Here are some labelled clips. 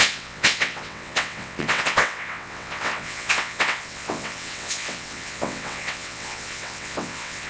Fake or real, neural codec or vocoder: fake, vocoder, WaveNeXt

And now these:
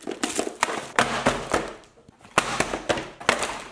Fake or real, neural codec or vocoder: real